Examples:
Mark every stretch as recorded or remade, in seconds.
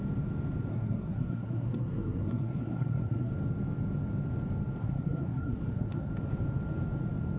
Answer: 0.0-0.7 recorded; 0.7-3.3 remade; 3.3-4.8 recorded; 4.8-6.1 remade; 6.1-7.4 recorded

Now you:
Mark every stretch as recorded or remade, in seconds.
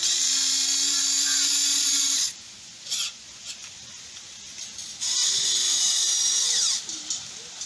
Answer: 0.0-1.7 recorded; 1.7-4.2 remade; 4.2-5.2 recorded; 5.2-5.8 remade; 5.8-7.7 recorded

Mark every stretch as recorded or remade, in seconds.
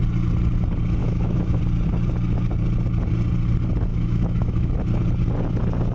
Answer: 0.0-1.0 recorded; 1.0-1.6 remade; 1.6-3.9 recorded; 3.9-4.7 remade; 4.7-5.9 recorded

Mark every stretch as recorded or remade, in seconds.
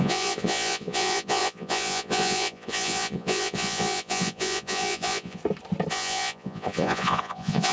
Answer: 0.0-5.4 remade; 5.4-5.9 recorded; 5.9-7.7 remade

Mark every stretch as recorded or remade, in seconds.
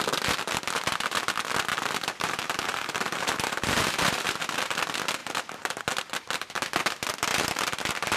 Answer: 0.0-1.7 recorded; 1.7-4.4 remade; 4.4-5.2 recorded; 5.2-5.8 remade; 5.8-7.3 recorded; 7.3-8.2 remade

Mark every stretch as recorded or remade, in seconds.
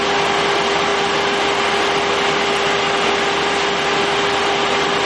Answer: 0.0-5.1 recorded